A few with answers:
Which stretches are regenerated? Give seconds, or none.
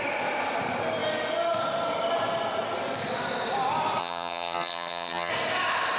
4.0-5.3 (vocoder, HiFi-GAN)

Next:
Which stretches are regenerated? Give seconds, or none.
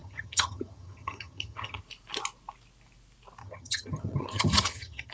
0.0-1.8 (vocoder, HiFi-GAN); 3.4-5.1